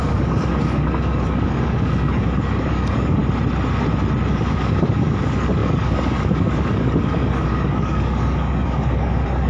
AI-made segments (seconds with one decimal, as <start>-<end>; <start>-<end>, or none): 0.0-3.2; 4.3-9.5